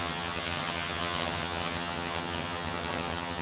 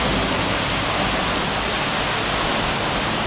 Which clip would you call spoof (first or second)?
first